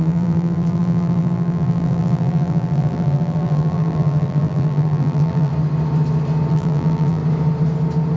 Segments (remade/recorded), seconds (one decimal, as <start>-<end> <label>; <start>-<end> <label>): 0.0-5.5 remade; 5.5-6.5 recorded; 6.5-7.2 remade; 7.2-8.2 recorded